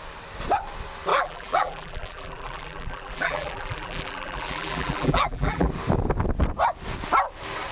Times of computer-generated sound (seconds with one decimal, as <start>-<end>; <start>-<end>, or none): 1.1-5.7